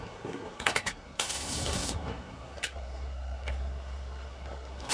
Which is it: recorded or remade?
remade